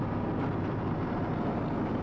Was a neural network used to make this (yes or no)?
no